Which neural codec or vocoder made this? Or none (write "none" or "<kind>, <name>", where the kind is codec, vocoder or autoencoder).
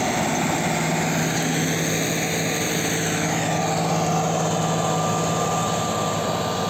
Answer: none